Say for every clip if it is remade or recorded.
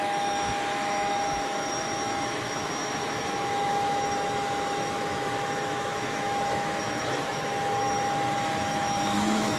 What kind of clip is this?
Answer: remade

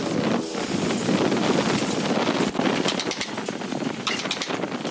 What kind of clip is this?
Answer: recorded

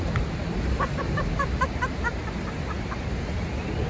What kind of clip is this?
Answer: recorded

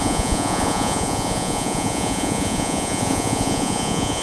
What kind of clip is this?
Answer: remade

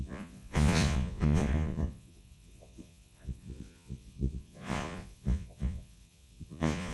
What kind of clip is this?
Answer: remade